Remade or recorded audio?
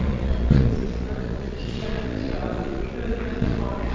remade